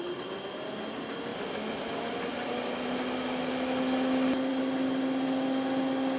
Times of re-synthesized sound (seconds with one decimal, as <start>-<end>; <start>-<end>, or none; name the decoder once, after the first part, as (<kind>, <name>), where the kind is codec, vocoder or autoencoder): none